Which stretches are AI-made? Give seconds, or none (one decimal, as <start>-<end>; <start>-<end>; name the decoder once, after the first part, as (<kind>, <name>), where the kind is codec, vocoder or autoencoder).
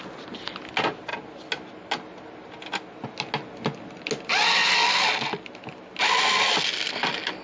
none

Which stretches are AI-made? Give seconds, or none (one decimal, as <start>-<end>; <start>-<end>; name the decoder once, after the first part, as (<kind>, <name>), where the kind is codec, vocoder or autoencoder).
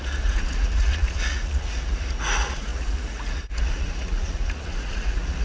0.0-5.4 (vocoder, Vocos)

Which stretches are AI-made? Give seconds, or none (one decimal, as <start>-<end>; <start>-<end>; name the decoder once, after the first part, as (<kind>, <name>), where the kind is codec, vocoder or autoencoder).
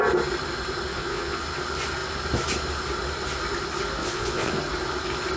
0.9-1.4 (vocoder, Vocos); 4.0-4.5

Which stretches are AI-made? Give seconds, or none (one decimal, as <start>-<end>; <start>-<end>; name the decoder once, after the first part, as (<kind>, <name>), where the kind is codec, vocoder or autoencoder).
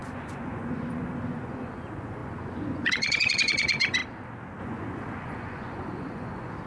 0.0-4.0 (vocoder, Vocos); 4.6-6.7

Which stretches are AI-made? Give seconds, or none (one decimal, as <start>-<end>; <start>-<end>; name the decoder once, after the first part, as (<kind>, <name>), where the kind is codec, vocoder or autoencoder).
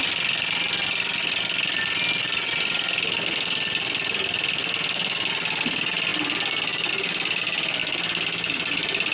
none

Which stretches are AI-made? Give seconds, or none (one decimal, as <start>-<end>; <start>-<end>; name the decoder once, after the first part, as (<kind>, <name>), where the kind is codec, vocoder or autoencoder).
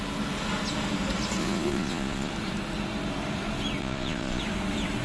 1.4-2.3 (vocoder, Vocos); 3.8-4.4